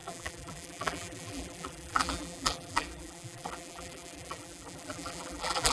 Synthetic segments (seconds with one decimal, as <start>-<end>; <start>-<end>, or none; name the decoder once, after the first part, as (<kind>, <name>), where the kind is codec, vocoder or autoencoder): 0.0-5.7 (vocoder, BigVGAN v2)